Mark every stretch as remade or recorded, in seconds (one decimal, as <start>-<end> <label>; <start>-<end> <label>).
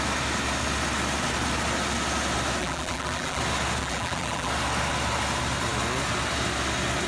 0.0-2.6 recorded; 2.6-3.4 remade; 3.4-3.8 recorded; 3.8-4.5 remade; 4.5-7.1 recorded